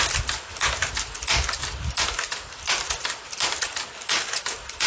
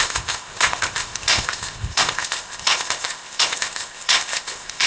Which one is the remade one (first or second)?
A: second